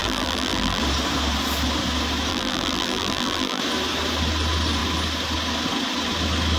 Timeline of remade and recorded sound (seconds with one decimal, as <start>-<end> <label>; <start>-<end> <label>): 0.0-0.8 remade; 0.8-2.3 recorded; 2.3-3.6 remade; 3.6-6.6 recorded